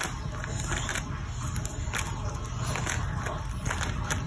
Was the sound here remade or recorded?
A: recorded